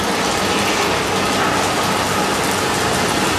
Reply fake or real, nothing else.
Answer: real